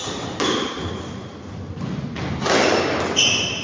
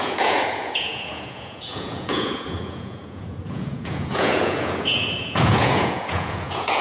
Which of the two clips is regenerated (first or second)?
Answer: second